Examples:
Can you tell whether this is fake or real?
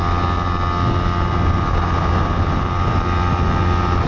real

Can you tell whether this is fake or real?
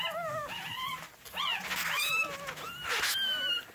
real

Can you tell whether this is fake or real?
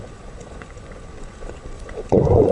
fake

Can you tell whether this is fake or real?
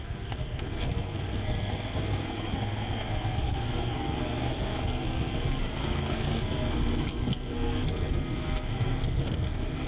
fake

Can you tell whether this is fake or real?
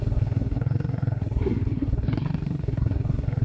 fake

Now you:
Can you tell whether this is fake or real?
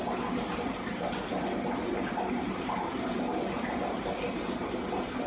real